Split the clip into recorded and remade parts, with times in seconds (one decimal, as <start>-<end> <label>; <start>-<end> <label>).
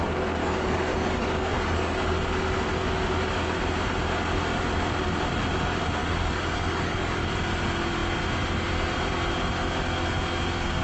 0.0-0.4 recorded; 0.4-2.2 remade; 2.2-6.0 recorded; 6.0-7.3 remade; 7.3-10.8 recorded